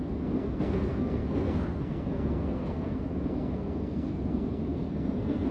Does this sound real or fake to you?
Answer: fake